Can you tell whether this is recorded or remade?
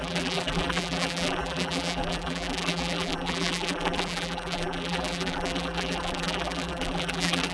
remade